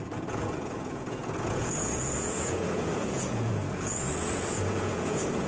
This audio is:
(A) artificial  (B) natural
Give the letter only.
A